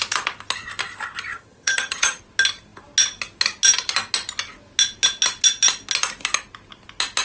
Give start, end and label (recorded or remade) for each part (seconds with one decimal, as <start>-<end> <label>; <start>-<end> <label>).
0.0-1.3 recorded; 1.3-2.2 remade; 2.2-7.2 recorded